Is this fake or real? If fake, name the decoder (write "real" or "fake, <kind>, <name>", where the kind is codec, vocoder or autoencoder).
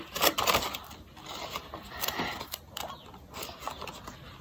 real